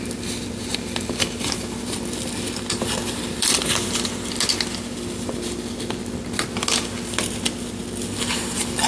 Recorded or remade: recorded